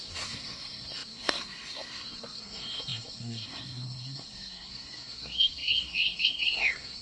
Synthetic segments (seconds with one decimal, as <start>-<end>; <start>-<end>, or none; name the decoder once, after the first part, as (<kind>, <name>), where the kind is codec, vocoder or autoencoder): 0.0-7.0 (codec, SNAC)